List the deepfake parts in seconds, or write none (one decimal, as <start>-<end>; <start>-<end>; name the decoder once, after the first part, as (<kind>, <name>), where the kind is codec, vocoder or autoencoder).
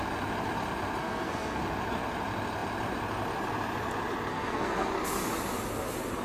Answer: 1.0-1.6 (codec, SNAC); 4.3-4.9